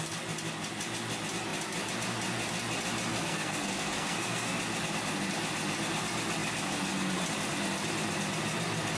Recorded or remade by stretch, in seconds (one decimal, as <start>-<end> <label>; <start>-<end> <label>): 0.0-3.1 recorded; 3.1-4.6 remade; 4.6-9.0 recorded